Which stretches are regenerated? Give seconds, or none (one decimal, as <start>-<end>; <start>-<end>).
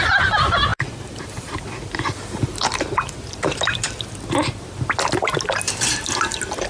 0.7-4.7